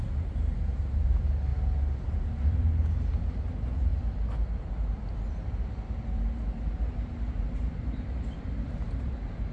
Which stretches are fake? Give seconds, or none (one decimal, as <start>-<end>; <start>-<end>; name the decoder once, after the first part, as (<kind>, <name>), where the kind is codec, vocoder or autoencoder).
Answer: 0.0-1.5 (vocoder, BigVGAN v2); 2.2-3.9; 4.7-9.5